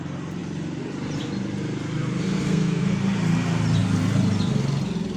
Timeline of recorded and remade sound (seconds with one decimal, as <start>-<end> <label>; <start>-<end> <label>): 0.0-2.2 recorded; 2.2-2.9 remade; 2.9-5.2 recorded